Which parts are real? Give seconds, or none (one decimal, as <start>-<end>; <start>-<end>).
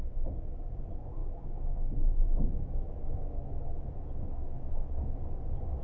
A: 0.0-1.2; 4.7-5.8